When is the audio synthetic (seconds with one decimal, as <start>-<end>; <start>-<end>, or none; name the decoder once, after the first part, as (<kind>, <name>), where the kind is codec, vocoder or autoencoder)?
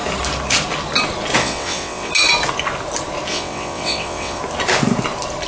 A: 1.4-2.1 (vocoder, WaveNeXt); 3.3-4.4